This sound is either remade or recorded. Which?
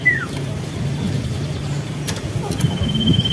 recorded